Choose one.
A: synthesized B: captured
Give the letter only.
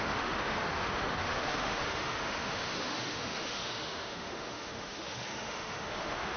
A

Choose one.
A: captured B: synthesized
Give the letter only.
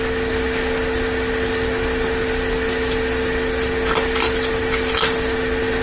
A